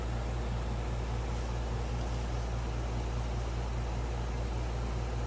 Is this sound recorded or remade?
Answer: recorded